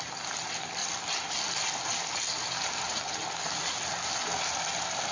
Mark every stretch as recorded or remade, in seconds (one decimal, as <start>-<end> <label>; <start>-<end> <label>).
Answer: 0.0-5.1 recorded